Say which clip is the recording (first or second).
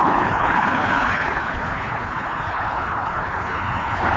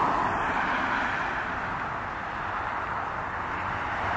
second